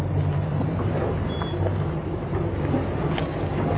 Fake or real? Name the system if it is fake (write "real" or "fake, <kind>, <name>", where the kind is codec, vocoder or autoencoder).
real